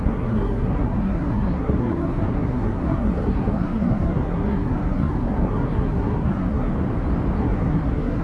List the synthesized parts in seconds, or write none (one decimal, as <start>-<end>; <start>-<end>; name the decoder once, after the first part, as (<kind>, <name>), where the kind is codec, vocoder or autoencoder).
0.0-6.7 (codec, SNAC); 7.4-8.2